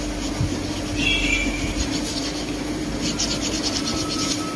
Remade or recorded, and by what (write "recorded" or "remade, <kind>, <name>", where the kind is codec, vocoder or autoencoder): recorded